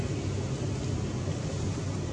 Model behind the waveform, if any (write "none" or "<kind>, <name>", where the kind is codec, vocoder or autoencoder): none